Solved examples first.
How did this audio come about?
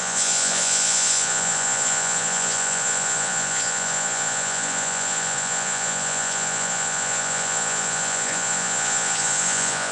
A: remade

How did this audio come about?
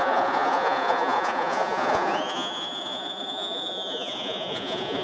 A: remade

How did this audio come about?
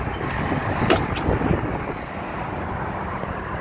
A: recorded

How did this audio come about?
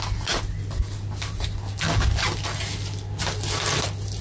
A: recorded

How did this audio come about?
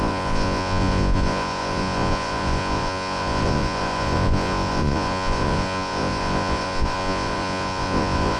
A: remade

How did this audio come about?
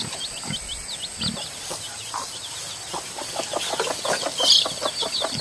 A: recorded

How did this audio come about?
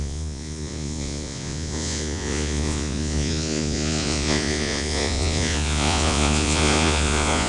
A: remade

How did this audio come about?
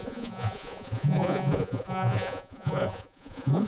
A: remade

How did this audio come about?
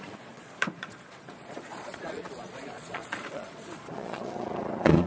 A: remade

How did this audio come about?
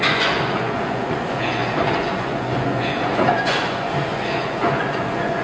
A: remade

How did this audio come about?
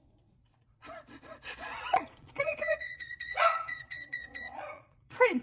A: remade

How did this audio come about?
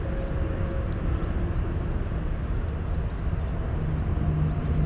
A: recorded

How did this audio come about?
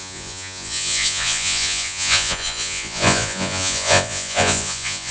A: remade